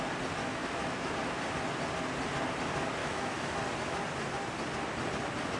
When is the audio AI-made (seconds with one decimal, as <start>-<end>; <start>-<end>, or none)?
0.4-1.1; 3.0-3.6